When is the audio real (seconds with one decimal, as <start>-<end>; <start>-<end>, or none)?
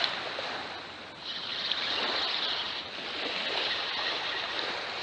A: 0.0-5.0